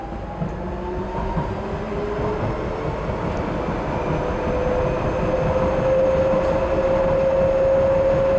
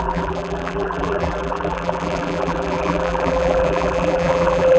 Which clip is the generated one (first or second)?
second